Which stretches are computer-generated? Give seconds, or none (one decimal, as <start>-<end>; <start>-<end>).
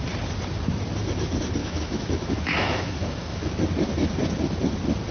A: 1.6-3.5